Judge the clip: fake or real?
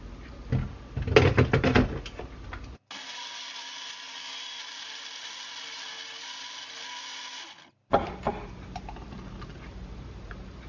real